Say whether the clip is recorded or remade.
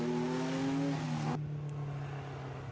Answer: recorded